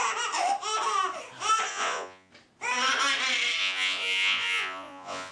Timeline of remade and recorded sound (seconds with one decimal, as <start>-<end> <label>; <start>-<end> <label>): 0.0-1.7 recorded; 1.7-2.3 remade; 2.3-3.6 recorded; 3.6-5.3 remade